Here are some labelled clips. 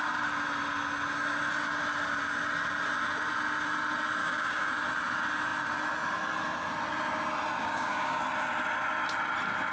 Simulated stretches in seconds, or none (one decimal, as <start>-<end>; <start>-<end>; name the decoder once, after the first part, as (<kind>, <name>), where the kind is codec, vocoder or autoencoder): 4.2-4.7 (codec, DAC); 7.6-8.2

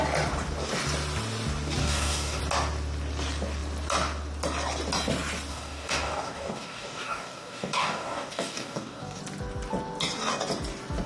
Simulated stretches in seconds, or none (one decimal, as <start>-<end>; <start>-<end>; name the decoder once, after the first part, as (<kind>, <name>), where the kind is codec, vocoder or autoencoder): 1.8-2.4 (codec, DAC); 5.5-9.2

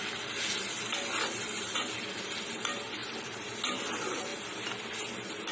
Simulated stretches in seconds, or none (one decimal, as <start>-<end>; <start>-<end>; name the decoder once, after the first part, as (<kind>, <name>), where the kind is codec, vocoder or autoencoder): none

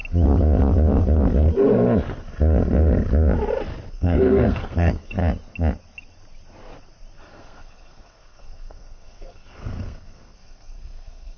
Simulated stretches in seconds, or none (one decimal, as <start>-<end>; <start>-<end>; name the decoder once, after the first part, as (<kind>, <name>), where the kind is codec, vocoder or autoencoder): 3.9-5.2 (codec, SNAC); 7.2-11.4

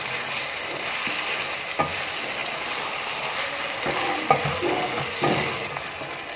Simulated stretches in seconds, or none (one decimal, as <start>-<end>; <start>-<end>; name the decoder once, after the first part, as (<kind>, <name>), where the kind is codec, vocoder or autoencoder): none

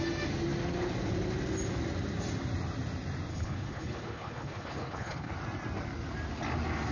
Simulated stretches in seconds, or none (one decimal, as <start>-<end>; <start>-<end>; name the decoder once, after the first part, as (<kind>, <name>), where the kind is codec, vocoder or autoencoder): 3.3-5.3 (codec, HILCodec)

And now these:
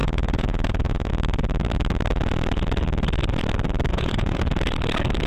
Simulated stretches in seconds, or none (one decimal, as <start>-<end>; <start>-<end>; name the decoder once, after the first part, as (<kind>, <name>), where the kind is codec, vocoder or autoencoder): 0.0-1.1 (vocoder, Vocos); 3.9-4.4